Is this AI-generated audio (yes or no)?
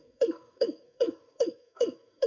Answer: yes